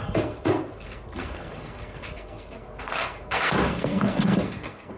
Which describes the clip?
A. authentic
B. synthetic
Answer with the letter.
B